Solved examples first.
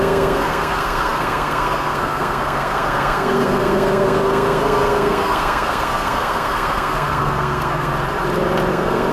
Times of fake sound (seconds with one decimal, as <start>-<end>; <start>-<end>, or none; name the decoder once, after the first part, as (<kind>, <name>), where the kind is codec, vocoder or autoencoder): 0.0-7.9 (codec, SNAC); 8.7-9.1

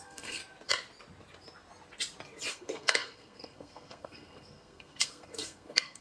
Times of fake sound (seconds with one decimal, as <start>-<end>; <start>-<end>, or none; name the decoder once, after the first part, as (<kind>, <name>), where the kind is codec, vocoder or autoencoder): 0.0-0.4 (codec, SNAC); 2.5-6.0

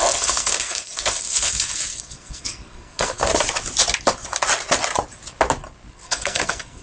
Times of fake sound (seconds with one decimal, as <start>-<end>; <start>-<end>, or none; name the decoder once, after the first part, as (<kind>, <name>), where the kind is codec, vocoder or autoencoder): 0.0-3.3 (codec, SNAC); 5.9-6.8

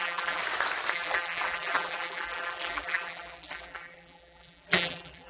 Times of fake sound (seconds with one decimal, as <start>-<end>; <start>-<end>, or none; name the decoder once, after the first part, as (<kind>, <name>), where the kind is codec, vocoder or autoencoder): 0.0-0.4 (vocoder, BigVGAN v2); 0.9-5.3